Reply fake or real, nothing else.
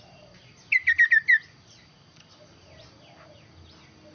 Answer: real